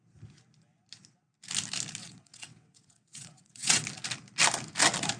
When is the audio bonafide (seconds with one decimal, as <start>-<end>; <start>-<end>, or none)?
0.0-2.0; 3.8-5.2